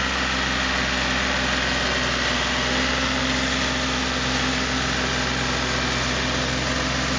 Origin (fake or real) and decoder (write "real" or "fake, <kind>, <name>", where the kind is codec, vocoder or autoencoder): real